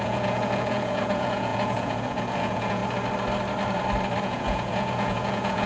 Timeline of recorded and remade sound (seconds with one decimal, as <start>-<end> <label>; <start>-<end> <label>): 0.0-2.8 remade; 2.8-4.2 recorded; 4.2-5.7 remade